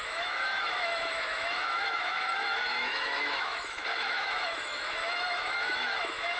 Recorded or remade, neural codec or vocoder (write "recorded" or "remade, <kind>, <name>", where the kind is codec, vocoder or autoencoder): remade, autoencoder, DAC-VAE